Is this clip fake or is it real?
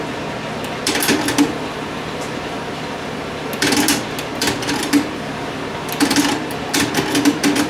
real